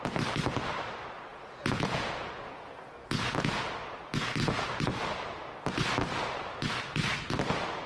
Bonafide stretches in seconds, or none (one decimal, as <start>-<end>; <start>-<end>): 0.0-1.3; 3.5-7.9